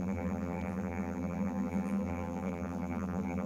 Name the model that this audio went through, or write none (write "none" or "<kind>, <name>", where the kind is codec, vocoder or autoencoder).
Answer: vocoder, BigVGAN v2